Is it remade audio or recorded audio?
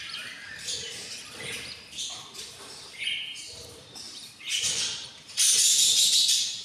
remade